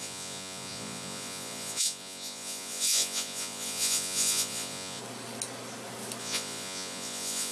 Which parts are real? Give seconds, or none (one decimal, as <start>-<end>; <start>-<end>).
5.0-6.2